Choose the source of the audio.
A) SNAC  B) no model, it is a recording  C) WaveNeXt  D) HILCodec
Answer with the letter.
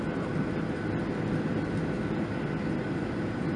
B